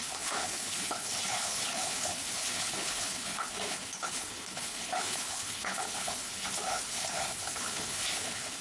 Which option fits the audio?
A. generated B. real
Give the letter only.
A